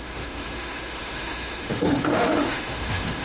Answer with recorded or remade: remade